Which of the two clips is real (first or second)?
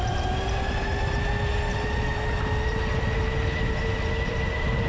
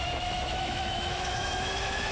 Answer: first